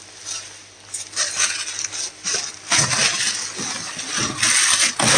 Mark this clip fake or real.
real